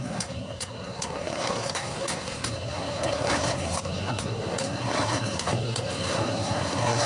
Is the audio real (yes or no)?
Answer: no